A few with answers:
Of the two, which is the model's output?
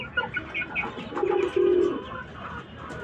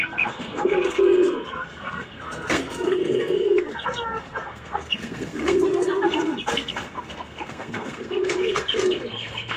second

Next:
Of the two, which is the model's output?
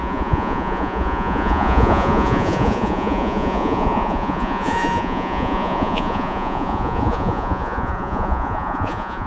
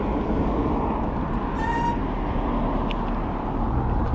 first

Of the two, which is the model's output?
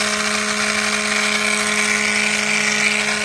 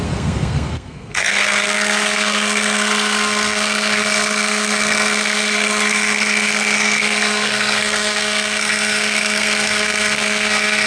second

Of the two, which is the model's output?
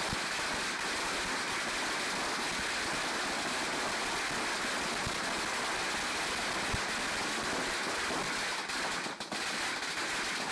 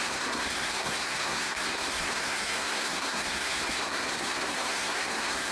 second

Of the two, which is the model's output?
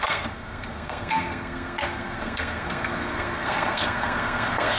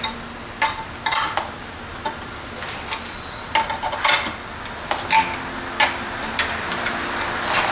first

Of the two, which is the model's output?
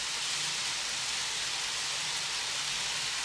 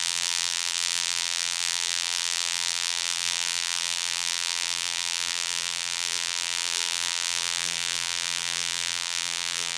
second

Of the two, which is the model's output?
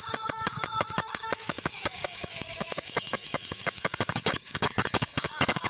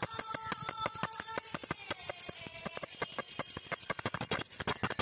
first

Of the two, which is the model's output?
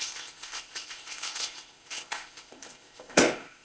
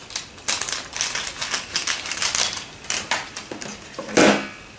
first